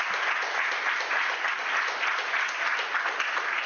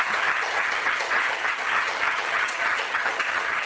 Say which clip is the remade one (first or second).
second